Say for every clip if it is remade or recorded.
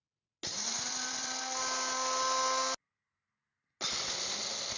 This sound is recorded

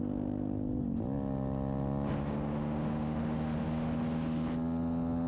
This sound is recorded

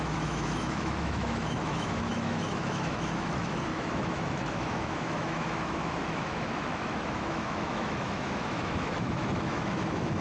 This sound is remade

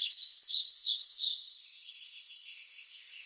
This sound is remade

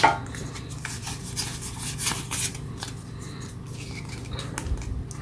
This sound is recorded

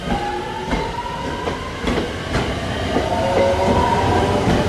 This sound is recorded